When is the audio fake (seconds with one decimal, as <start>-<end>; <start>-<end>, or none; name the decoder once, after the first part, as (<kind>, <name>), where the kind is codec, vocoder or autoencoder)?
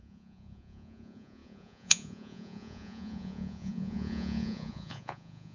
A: 0.0-5.5 (vocoder, Vocos)